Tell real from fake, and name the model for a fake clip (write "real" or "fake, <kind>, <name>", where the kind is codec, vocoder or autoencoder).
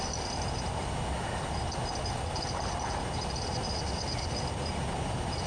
real